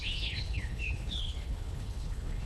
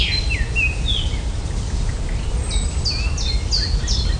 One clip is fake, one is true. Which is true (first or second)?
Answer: second